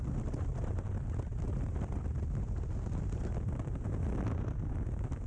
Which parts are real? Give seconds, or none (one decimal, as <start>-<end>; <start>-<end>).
0.0-5.3

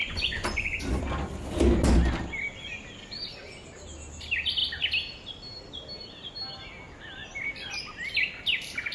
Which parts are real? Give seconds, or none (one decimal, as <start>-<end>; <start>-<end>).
0.8-8.9

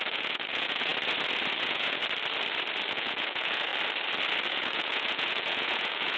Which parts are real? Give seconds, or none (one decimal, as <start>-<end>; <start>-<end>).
0.9-1.6; 2.0-2.9; 3.7-4.5